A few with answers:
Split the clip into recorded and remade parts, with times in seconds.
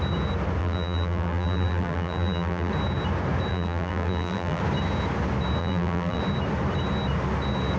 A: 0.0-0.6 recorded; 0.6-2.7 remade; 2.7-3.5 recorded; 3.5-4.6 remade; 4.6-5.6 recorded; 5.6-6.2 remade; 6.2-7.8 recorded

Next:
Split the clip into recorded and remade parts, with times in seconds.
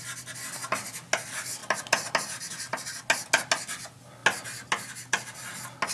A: 0.0-5.9 recorded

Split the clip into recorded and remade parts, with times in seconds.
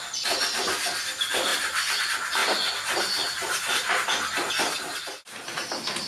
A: 0.0-1.5 recorded; 1.5-2.0 remade; 2.0-6.1 recorded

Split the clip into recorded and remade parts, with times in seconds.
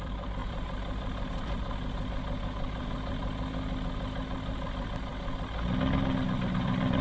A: 0.0-3.2 remade; 3.2-4.2 recorded; 4.2-5.1 remade; 5.1-6.2 recorded; 6.2-7.0 remade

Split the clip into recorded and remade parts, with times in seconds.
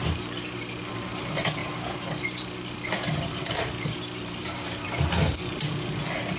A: 0.0-0.8 remade; 0.8-1.6 recorded; 1.6-5.4 remade; 5.4-6.4 recorded